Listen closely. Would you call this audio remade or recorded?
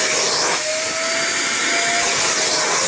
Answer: recorded